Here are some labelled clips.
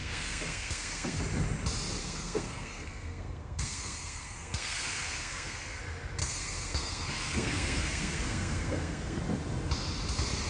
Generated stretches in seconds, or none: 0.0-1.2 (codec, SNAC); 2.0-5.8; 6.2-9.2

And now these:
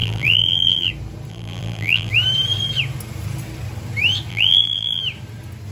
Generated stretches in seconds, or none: 0.0-0.9 (vocoder, BigVGAN v2); 1.3-2.1; 4.3-5.0

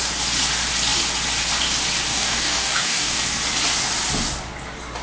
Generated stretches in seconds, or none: 2.1-3.2 (codec, DAC)

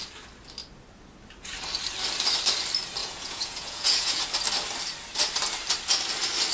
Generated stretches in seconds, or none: 3.0-4.2 (vocoder, Vocos)

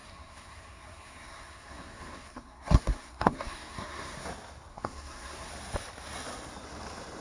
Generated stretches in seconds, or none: 0.0-4.2 (codec, SNAC); 4.7-5.5

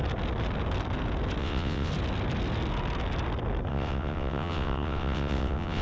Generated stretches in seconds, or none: 1.4-1.9 (vocoder, WaveNeXt); 3.7-5.8